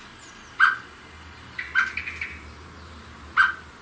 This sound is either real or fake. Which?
real